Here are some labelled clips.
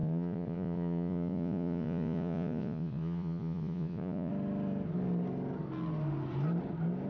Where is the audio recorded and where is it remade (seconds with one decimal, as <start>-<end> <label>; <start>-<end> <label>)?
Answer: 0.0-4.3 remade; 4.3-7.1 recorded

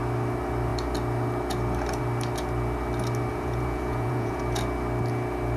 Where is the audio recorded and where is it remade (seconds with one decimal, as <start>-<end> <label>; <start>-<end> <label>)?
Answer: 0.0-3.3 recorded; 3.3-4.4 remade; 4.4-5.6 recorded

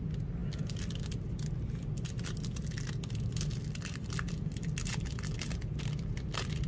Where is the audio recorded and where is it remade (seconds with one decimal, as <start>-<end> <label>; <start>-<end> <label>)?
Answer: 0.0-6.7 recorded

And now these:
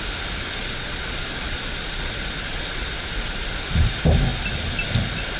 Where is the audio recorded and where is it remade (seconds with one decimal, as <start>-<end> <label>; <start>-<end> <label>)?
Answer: 0.0-0.6 recorded; 0.6-3.8 remade; 3.8-5.4 recorded

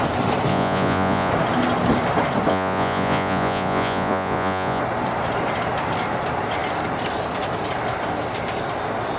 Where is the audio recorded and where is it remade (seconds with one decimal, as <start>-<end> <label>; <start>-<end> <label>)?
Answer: 0.0-0.5 recorded; 0.5-1.3 remade; 1.3-2.5 recorded; 2.5-4.8 remade; 4.8-9.2 recorded

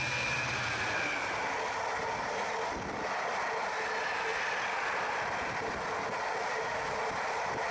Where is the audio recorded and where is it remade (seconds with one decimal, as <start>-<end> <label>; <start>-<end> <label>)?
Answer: 0.0-7.7 recorded